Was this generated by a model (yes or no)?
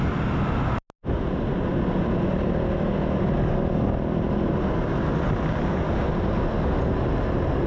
no